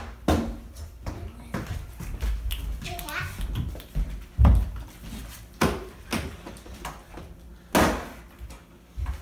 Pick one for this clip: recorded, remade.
recorded